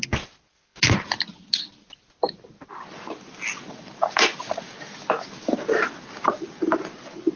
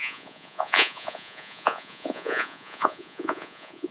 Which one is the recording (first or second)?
first